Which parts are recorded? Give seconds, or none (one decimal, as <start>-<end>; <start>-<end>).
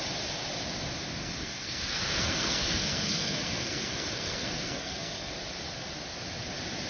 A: 0.0-1.2; 5.3-6.9